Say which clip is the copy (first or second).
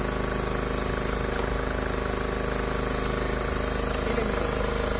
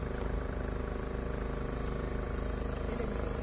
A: second